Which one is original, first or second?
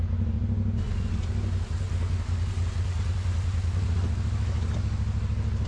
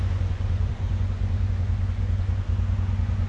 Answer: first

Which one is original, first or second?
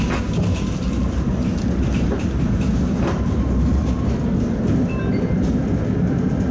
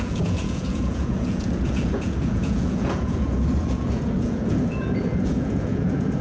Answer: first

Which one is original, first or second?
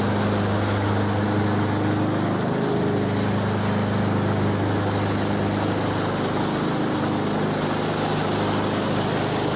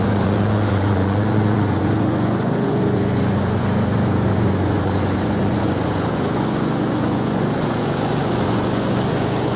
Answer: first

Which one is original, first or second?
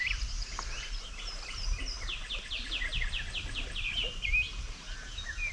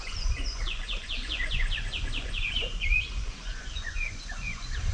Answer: first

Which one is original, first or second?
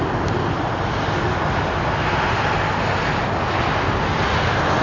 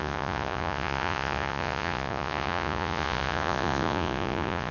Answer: first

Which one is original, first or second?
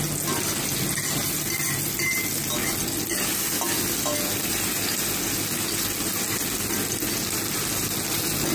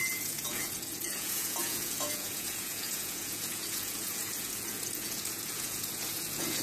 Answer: first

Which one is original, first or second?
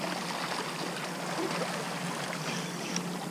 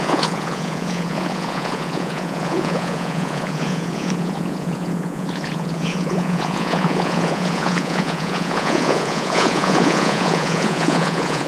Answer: first